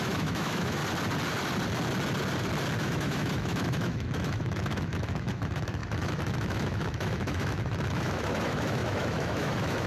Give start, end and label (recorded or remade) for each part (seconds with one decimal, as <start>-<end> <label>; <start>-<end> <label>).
0.0-0.8 remade; 0.8-2.8 recorded; 2.8-9.9 remade